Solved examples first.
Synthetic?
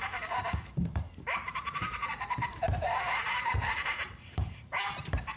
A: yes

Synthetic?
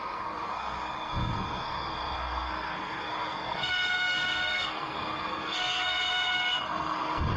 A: yes